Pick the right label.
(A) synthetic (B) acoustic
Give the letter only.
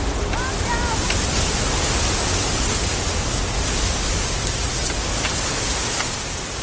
B